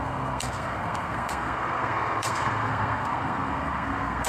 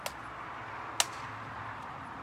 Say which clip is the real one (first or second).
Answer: second